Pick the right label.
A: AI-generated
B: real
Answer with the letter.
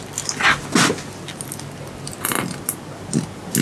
B